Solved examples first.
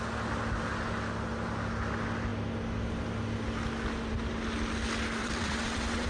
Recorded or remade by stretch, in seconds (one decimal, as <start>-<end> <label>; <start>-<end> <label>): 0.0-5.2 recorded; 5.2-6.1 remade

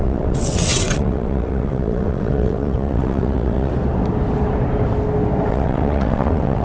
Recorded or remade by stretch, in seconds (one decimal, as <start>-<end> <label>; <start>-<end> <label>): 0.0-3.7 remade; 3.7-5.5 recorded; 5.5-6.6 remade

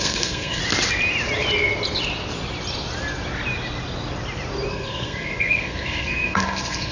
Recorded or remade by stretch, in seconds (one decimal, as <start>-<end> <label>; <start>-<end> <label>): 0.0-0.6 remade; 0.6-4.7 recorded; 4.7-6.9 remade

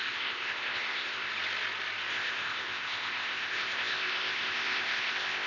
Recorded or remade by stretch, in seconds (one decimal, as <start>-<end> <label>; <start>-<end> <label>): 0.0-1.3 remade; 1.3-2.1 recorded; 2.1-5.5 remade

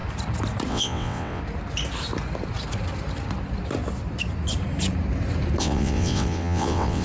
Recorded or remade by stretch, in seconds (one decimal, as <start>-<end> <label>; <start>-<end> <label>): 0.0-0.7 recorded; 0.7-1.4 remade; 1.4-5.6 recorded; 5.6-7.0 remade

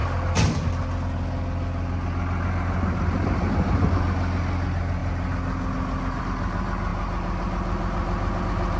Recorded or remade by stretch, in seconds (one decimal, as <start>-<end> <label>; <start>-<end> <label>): 0.0-8.8 recorded